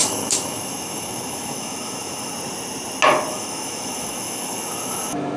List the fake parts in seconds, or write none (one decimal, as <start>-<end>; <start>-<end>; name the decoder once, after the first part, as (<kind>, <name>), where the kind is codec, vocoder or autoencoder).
0.0-2.3 (autoencoder, DAC-VAE); 3.3-5.4